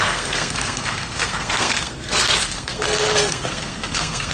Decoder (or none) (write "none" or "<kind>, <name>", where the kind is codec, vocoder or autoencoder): codec, SNAC